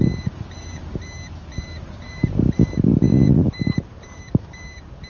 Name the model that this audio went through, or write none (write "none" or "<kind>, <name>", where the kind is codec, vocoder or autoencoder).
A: vocoder, BigVGAN v2